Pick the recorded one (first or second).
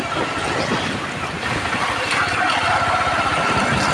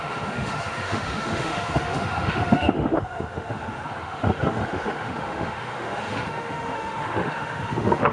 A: first